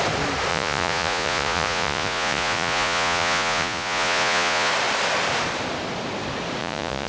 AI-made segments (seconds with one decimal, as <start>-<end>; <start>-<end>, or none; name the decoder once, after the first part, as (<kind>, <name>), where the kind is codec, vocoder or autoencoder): 0.5-4.7 (vocoder, Vocos); 6.6-7.1